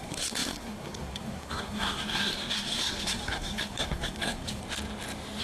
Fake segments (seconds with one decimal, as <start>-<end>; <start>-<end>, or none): 0.0-4.6